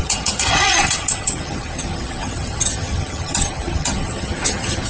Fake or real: fake